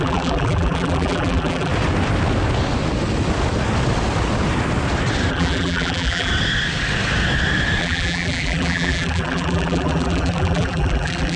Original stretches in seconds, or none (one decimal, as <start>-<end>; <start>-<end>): 1.7-5.3; 6.3-7.8